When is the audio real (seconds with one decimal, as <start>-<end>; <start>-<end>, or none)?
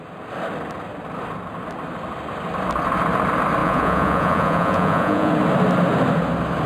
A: 0.0-3.6; 5.3-6.7